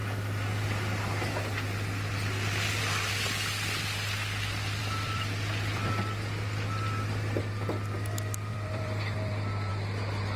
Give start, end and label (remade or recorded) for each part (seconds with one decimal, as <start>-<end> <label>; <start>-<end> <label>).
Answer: 0.0-4.8 recorded; 4.8-5.9 remade; 5.9-8.5 recorded; 8.5-9.7 remade; 9.7-10.4 recorded